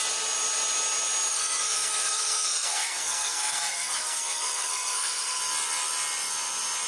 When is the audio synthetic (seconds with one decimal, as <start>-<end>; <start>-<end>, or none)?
1.3-5.4